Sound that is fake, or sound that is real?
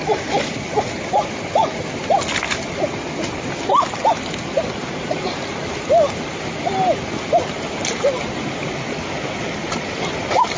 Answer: real